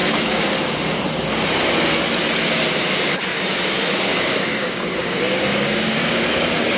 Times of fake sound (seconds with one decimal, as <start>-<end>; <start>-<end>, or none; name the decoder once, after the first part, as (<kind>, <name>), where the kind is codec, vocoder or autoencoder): 4.0-6.8 (codec, DAC)